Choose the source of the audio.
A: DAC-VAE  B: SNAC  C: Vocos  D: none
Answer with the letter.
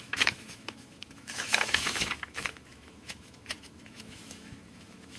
A